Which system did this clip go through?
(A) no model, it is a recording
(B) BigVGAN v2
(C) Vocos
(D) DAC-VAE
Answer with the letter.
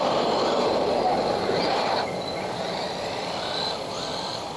B